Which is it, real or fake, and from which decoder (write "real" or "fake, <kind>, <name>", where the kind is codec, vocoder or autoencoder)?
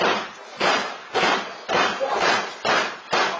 real